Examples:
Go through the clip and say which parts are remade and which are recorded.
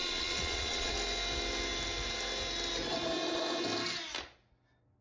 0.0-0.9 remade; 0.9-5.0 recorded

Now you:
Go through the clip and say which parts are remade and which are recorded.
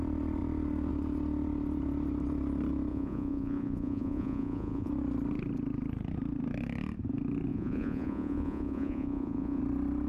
0.0-2.9 recorded; 2.9-4.9 remade; 4.9-7.5 recorded; 7.5-9.6 remade; 9.6-10.1 recorded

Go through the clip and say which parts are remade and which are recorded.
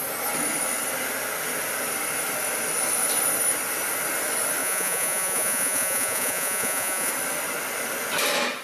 0.0-4.6 recorded; 4.6-7.1 remade; 7.1-8.6 recorded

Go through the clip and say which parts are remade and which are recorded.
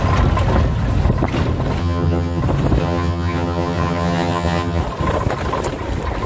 0.0-1.8 recorded; 1.8-2.4 remade; 2.4-2.8 recorded; 2.8-4.8 remade; 4.8-6.3 recorded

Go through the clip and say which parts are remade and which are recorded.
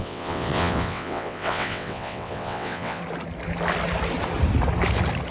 0.0-3.0 remade; 3.0-5.3 recorded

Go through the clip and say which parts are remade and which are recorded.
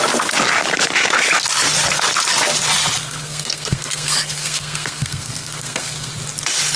0.0-3.0 recorded; 3.0-6.1 remade; 6.1-6.8 recorded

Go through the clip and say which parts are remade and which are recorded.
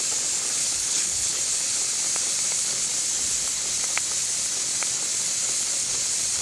0.0-0.6 recorded; 0.6-1.4 remade; 1.4-6.4 recorded